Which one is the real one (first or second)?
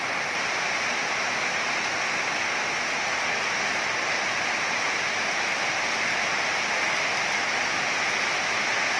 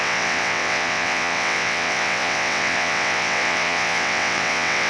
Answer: first